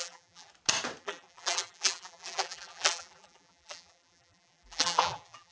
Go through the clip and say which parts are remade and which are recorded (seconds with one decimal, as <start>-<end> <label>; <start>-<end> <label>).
0.0-0.5 remade; 0.5-1.0 recorded; 1.0-5.5 remade